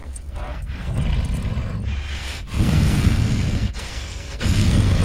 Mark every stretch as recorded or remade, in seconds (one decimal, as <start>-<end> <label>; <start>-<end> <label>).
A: 0.0-1.0 remade; 1.0-2.1 recorded; 2.1-5.0 remade